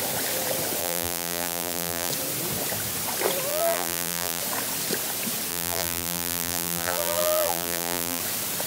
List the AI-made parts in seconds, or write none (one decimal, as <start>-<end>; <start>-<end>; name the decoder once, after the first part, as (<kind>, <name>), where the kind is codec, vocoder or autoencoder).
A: 0.8-2.1 (vocoder, BigVGAN v2); 3.5-4.4; 5.5-8.2